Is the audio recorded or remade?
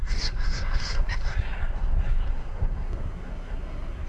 remade